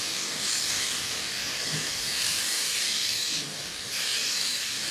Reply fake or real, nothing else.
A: fake